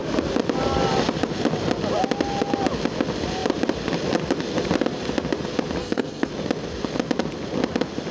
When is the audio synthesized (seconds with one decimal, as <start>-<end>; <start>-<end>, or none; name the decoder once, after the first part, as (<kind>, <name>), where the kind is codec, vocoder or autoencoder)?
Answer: 5.8-6.3 (codec, SNAC)